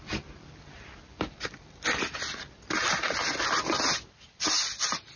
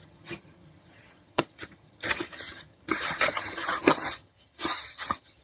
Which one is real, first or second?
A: first